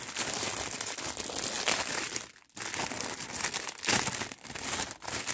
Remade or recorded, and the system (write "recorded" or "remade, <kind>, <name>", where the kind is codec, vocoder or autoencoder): recorded